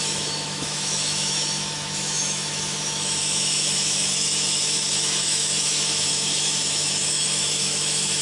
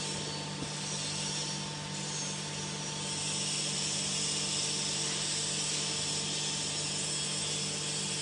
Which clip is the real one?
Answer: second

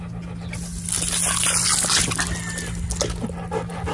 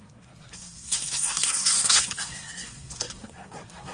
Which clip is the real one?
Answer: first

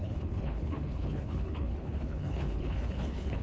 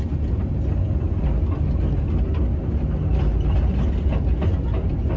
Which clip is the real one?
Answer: second